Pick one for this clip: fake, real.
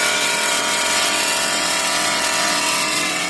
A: fake